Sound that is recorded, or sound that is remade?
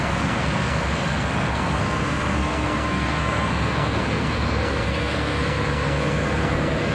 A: remade